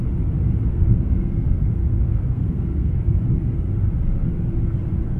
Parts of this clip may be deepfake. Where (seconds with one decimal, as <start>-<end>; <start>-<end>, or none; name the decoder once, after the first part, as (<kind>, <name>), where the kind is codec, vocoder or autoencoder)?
0.7-2.9 (codec, SNAC)